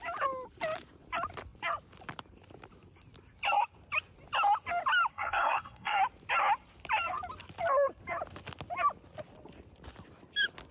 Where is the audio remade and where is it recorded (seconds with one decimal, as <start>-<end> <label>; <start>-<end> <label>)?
0.0-5.1 recorded; 5.1-6.0 remade; 6.0-10.7 recorded